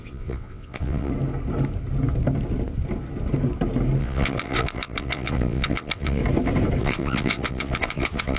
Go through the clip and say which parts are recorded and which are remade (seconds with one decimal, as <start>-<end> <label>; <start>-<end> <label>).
0.0-1.1 remade; 1.1-4.0 recorded; 4.0-6.2 remade; 6.2-6.8 recorded; 6.8-8.4 remade